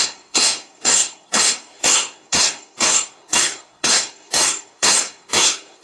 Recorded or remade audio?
remade